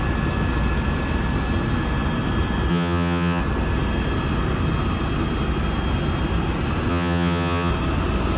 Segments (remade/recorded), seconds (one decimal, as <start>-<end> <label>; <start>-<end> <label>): 0.0-2.7 recorded; 2.7-3.4 remade; 3.4-6.9 recorded; 6.9-7.7 remade; 7.7-8.4 recorded